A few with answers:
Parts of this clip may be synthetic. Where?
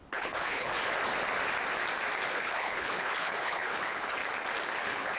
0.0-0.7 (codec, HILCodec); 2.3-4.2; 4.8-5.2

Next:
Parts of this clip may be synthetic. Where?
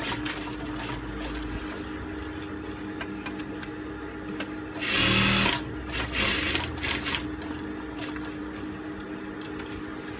none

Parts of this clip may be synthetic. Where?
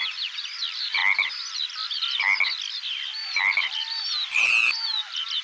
3.2-4.5 (vocoder, BigVGAN v2)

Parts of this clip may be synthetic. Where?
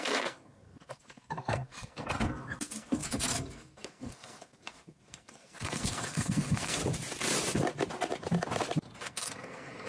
0.0-6.8 (codec, SNAC); 9.0-9.9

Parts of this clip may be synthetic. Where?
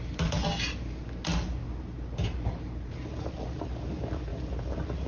none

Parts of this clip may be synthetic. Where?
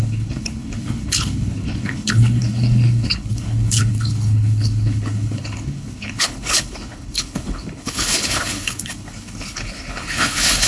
0.0-10.7 (codec, HILCodec)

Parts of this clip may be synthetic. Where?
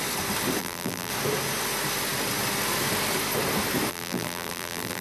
0.6-1.1 (vocoder, BigVGAN v2); 3.9-5.0